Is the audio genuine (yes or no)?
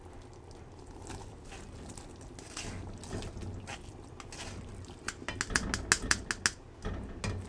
yes